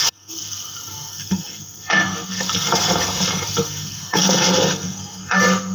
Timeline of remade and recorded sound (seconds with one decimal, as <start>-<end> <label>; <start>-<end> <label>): 0.0-5.7 remade